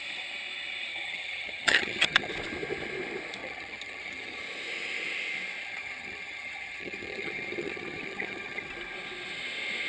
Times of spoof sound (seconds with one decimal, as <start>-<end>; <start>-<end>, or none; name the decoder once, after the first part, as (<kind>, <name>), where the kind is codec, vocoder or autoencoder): 0.9-2.3 (vocoder, HiFi-GAN); 3.4-4.4; 5.6-8.7